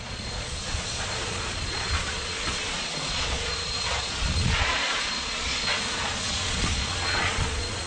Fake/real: fake